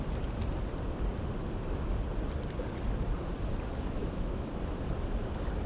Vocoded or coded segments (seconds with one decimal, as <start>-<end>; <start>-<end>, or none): 4.0-4.5